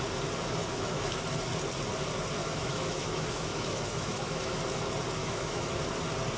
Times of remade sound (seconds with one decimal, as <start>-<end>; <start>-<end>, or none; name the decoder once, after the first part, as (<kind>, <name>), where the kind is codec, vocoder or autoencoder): 0.6-1.2 (autoencoder, DAC-VAE); 2.4-4.6; 5.2-5.8